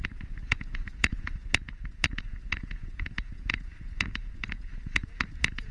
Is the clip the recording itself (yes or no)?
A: no